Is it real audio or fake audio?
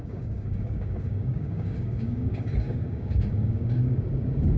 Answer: fake